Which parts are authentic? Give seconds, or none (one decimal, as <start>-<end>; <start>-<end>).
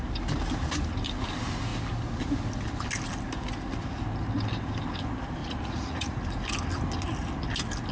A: 0.0-5.4; 6.2-7.9